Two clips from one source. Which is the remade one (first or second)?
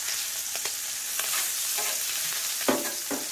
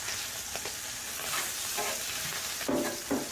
first